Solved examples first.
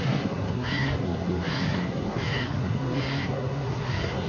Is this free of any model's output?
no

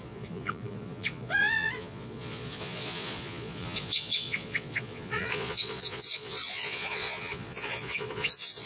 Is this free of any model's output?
no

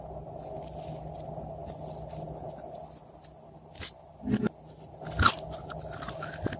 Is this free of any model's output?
yes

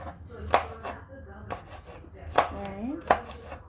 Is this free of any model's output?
yes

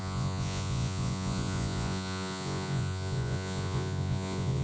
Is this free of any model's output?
no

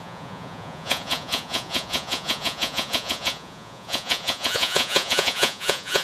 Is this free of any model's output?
no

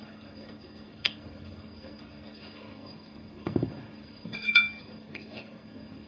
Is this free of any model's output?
no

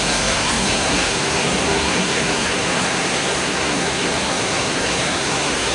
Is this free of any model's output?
no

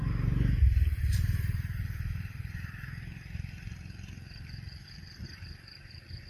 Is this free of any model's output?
no